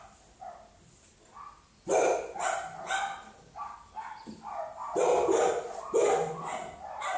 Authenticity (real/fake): real